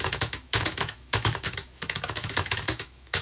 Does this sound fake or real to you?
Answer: fake